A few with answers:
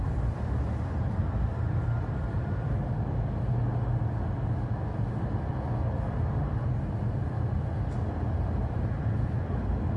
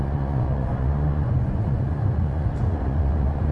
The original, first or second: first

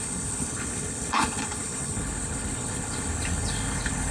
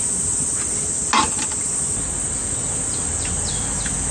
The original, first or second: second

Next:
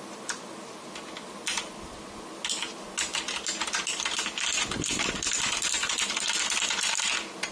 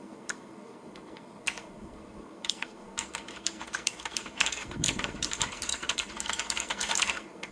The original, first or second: first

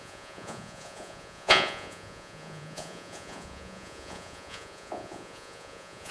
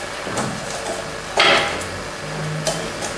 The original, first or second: second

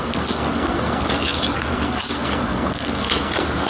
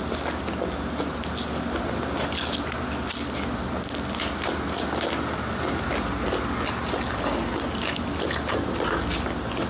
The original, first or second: second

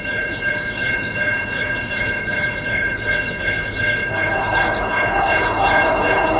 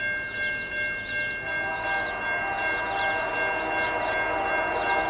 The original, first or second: second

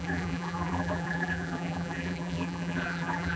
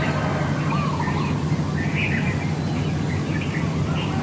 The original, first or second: second